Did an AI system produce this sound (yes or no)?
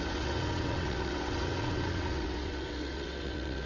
yes